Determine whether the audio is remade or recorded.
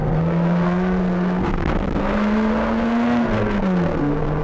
remade